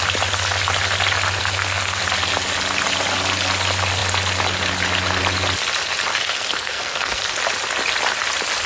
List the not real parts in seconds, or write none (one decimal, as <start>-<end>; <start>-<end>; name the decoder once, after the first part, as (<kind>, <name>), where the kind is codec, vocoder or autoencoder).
1.4-2.0 (codec, SNAC); 6.1-7.3